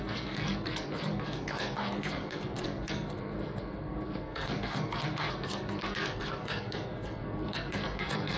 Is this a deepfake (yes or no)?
yes